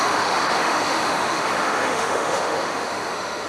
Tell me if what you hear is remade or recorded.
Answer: remade